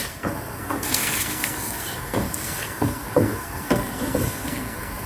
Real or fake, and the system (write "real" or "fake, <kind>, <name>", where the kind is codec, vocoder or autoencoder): fake, codec, SNAC